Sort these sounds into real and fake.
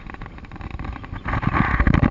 real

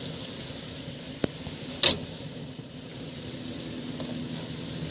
real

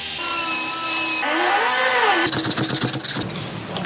real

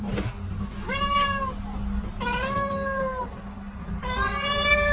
real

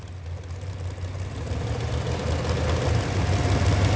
real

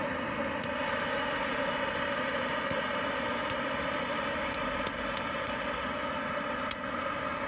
real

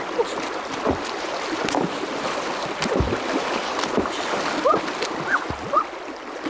real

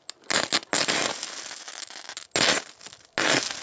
real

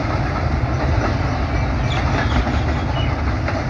real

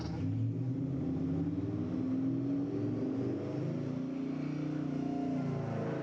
real